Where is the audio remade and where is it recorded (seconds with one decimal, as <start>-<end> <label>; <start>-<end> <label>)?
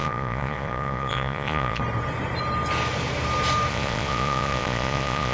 0.0-1.8 remade; 1.8-3.7 recorded; 3.7-5.3 remade